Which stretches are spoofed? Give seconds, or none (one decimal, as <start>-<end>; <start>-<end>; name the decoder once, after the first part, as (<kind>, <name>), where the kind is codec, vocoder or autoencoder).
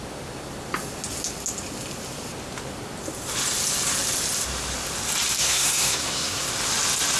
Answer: 5.4-6.5 (codec, SNAC)